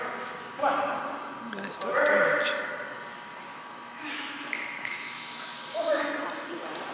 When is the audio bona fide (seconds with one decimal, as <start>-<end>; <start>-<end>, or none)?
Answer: 0.0-3.5; 6.0-6.9